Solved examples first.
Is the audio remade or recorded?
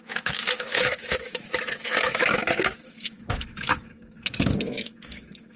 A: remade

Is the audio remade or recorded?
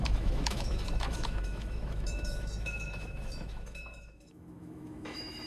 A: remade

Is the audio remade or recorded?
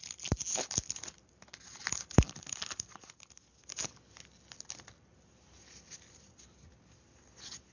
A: recorded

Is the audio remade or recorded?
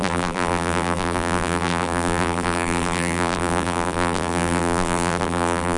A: remade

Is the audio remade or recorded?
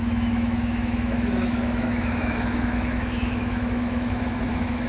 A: remade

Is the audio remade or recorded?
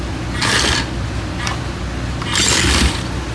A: recorded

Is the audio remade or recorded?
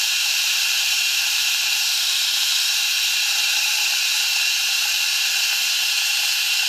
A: remade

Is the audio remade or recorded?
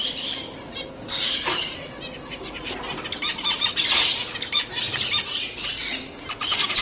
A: remade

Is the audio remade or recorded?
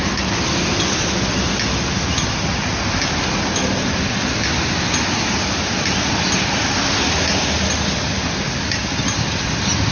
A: recorded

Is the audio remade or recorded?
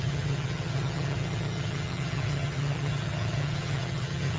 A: remade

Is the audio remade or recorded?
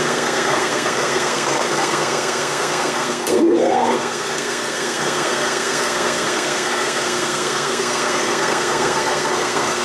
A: remade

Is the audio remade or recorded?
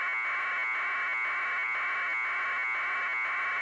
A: recorded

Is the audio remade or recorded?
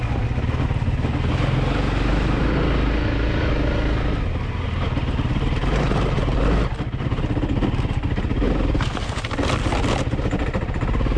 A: recorded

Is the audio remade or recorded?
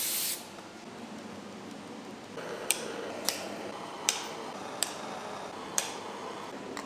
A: remade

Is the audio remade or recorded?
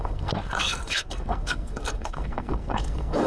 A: remade